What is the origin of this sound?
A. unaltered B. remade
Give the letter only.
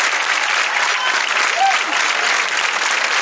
A